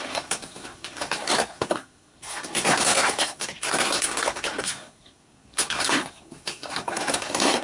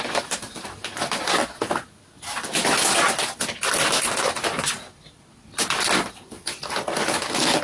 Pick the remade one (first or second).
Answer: first